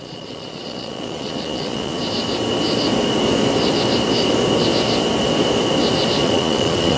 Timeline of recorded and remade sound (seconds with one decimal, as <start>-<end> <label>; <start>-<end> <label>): 0.0-2.0 remade; 2.0-6.2 recorded; 6.2-7.0 remade